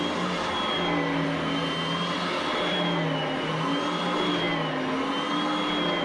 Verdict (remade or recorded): recorded